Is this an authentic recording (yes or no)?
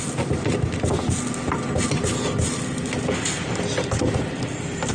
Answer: yes